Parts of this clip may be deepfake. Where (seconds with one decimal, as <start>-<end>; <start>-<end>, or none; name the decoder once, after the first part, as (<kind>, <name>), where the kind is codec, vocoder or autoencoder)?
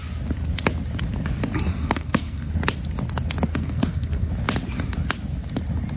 1.7-2.5 (codec, SNAC); 3.5-4.3